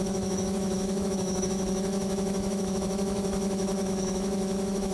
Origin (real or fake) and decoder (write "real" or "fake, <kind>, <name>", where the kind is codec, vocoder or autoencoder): fake, autoencoder, DAC-VAE